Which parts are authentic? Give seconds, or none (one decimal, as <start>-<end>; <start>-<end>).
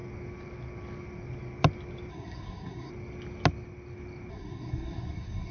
0.0-2.1; 2.9-4.3